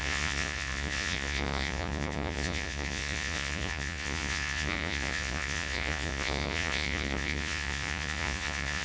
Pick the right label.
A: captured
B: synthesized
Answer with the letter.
B